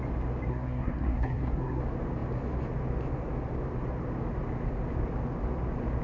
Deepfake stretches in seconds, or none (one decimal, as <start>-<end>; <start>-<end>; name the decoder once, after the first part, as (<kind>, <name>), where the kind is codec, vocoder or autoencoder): 0.5-1.8 (codec, SNAC)